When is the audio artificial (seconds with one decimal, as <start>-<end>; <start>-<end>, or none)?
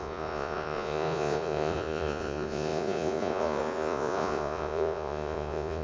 0.0-5.8